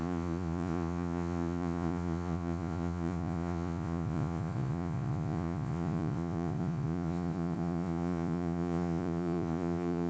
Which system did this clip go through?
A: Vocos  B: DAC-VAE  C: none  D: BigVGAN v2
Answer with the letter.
A